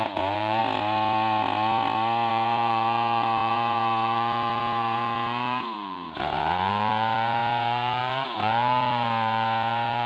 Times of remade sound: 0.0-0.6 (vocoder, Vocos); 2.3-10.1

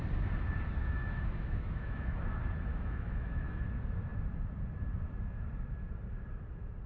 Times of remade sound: 0.8-2.2 (autoencoder, DAC-VAE); 2.7-3.6

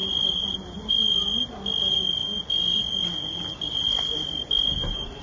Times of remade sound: none

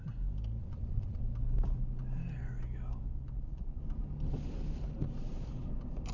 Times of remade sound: 0.6-1.2 (vocoder, Vocos); 3.1-3.8

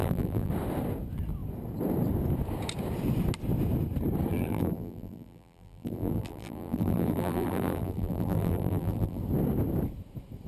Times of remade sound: 0.0-0.5 (vocoder, BigVGAN v2); 4.3-9.2